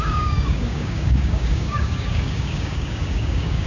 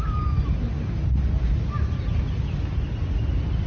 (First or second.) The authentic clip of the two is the second